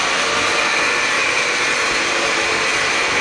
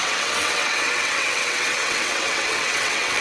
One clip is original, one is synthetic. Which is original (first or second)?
first